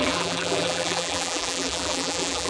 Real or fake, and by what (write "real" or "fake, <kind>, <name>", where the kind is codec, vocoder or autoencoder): fake, vocoder, BigVGAN v2